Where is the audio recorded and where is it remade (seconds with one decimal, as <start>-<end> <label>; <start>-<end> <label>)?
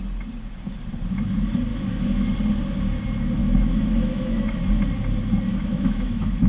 0.0-1.7 recorded; 1.7-2.3 remade; 2.3-3.4 recorded; 3.4-4.6 remade; 4.6-5.5 recorded; 5.5-6.5 remade